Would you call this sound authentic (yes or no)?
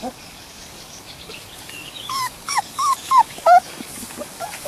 no